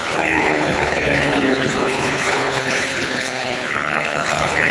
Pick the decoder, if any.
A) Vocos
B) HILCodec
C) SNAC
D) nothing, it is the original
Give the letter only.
B